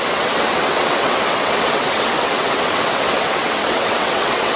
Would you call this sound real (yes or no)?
no